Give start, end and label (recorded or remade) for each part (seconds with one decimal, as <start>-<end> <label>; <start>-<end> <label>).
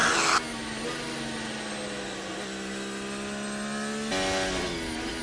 0.0-5.2 recorded